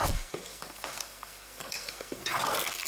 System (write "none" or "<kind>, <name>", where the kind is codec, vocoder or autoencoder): codec, SNAC